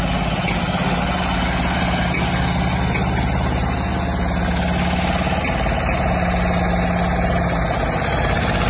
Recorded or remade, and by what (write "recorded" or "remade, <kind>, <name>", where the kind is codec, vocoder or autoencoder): recorded